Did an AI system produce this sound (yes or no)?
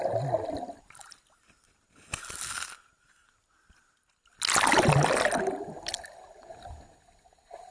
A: no